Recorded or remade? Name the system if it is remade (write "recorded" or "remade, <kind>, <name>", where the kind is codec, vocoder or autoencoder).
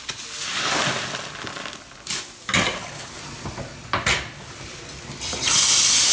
recorded